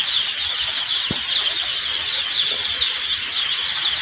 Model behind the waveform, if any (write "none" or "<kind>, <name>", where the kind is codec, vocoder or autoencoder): none